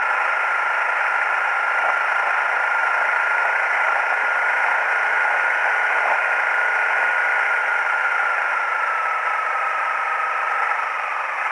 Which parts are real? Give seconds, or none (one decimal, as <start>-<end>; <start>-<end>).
0.0-11.5